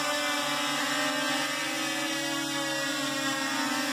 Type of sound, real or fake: real